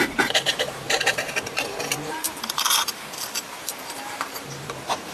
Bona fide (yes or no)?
no